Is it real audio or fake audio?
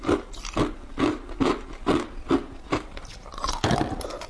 real